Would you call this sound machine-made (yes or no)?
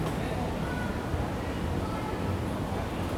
no